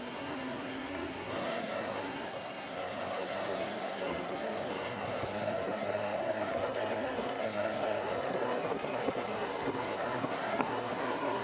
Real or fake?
fake